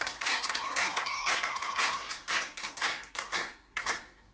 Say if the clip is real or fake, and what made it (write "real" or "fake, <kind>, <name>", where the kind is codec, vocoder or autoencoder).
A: fake, codec, SNAC